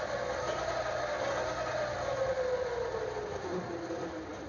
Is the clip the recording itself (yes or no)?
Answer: yes